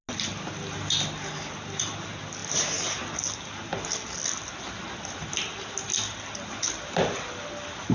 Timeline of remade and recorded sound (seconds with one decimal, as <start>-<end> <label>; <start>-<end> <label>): 0.0-7.9 recorded